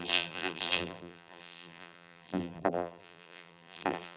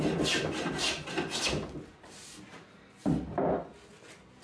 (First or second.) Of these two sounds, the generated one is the first